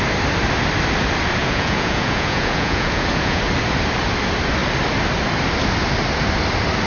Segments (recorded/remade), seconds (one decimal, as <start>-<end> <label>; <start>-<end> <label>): 0.0-1.4 recorded; 1.4-3.4 remade; 3.4-6.9 recorded